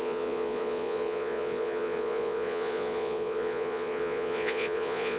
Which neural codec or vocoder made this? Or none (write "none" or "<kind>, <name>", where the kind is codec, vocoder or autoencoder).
vocoder, Vocos